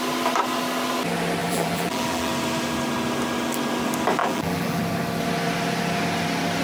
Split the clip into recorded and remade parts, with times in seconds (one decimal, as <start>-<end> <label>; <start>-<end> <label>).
0.0-1.4 recorded; 1.4-2.3 remade; 2.3-4.2 recorded; 4.2-4.8 remade; 4.8-6.6 recorded